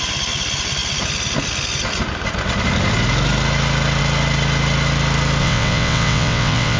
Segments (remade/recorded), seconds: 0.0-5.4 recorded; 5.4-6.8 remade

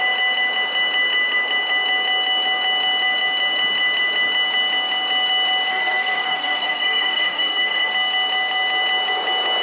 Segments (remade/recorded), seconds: 0.0-5.7 recorded; 5.7-7.9 remade; 7.9-9.6 recorded

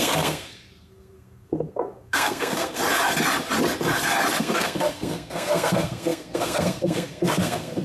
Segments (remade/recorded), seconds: 0.0-2.8 remade; 2.8-4.4 recorded; 4.4-7.8 remade

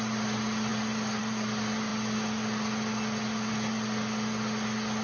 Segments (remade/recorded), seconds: 0.0-5.0 recorded

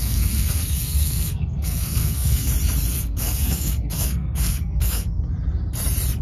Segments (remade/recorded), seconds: 0.0-2.5 remade; 2.5-2.9 recorded; 2.9-5.2 remade; 5.2-6.2 recorded

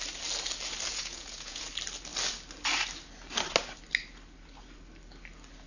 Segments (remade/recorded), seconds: 0.0-0.9 recorded; 0.9-1.7 remade; 1.7-5.7 recorded

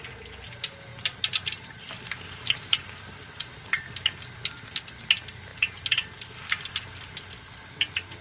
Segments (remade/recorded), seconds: 0.0-0.9 recorded; 0.9-3.9 remade; 3.9-8.2 recorded

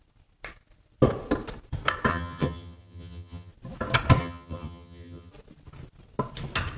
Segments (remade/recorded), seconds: 0.0-2.1 recorded; 2.1-3.5 remade; 3.5-4.2 recorded; 4.2-5.3 remade; 5.3-6.8 recorded